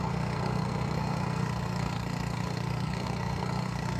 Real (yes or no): no